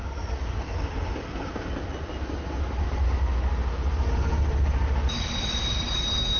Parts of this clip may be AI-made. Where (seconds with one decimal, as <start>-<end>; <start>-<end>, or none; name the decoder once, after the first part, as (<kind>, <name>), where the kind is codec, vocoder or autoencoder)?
0.0-1.9 (vocoder, BigVGAN v2)